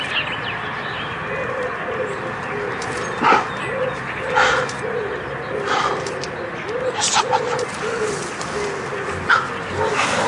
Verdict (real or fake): real